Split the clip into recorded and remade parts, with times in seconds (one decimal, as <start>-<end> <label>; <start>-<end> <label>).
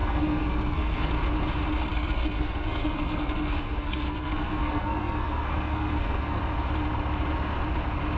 0.0-1.1 remade; 1.1-1.9 recorded; 1.9-6.4 remade; 6.4-8.2 recorded